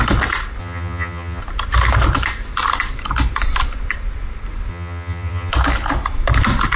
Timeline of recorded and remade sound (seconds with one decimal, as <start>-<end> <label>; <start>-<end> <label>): 0.0-0.6 recorded; 0.6-1.4 remade; 1.4-4.7 recorded; 4.7-5.5 remade; 5.5-6.8 recorded